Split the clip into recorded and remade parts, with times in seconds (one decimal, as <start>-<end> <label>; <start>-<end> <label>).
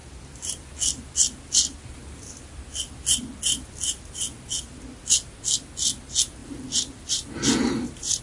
0.0-0.7 remade; 0.7-6.4 recorded; 6.4-8.2 remade